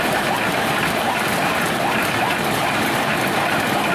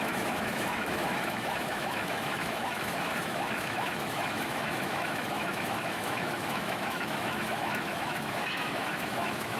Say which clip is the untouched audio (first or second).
first